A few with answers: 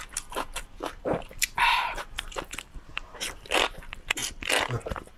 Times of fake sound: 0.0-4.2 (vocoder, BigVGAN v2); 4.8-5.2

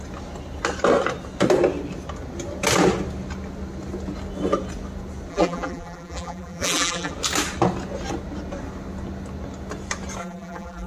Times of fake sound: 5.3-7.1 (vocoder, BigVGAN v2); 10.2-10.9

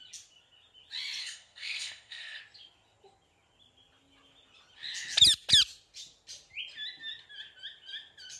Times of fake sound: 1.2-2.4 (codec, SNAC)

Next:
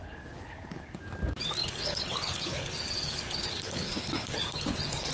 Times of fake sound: 0.0-1.0 (codec, HILCodec); 1.6-5.1

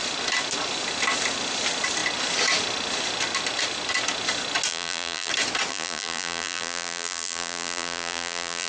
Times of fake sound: 4.7-5.3 (vocoder, BigVGAN v2); 5.7-8.7

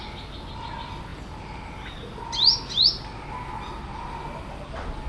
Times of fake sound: none

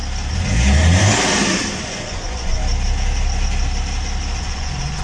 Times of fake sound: 1.8-2.6 (vocoder, Vocos); 4.4-5.0